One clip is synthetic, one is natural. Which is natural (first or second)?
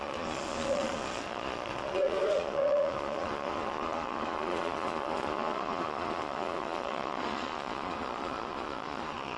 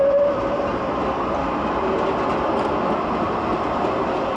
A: second